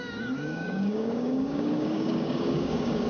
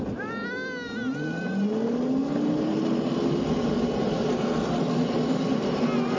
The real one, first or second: second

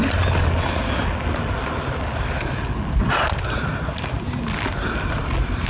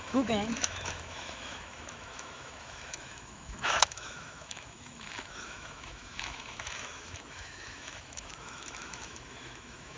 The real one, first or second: first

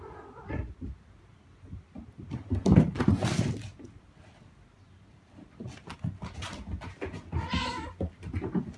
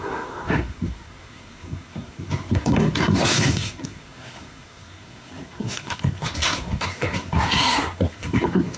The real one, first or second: first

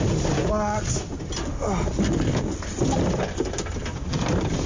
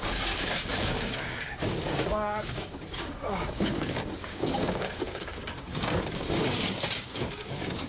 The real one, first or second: first